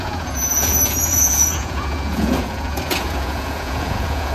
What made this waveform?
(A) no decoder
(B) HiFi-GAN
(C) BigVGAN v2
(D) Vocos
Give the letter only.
D